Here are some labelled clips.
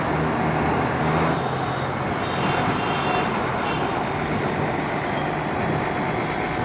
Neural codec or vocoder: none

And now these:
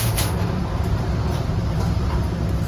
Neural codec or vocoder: vocoder, BigVGAN v2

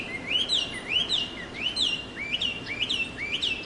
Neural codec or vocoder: none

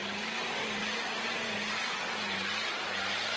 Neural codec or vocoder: none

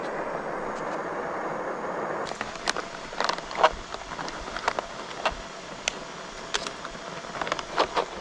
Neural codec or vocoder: none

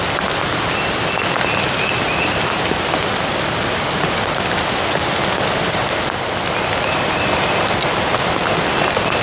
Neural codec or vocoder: none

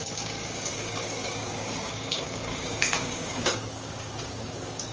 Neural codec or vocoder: codec, DAC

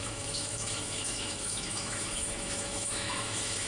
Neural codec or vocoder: autoencoder, DAC-VAE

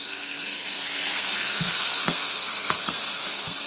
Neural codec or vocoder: codec, SNAC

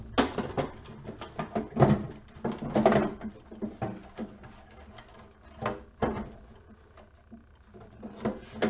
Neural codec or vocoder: none